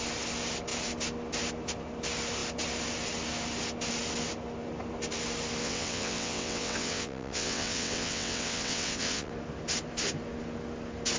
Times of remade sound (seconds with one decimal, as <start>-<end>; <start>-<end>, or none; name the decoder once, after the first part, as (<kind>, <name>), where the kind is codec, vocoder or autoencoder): 5.6-9.3 (vocoder, WaveNeXt)